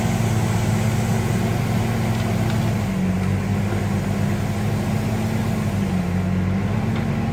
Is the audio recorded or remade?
recorded